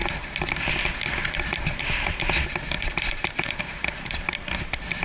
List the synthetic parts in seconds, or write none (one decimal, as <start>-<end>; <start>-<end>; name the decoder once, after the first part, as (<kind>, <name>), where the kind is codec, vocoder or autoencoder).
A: 0.0-0.7 (vocoder, BigVGAN v2); 1.2-4.2